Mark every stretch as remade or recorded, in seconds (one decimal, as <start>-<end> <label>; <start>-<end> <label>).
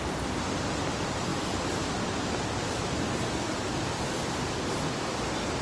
0.0-5.6 recorded